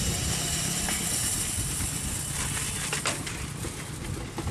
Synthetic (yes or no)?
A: no